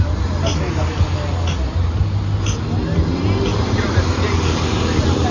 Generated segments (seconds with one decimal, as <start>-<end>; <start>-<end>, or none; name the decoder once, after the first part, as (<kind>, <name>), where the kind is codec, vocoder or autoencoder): 0.0-0.8 (vocoder, BigVGAN v2); 2.8-5.3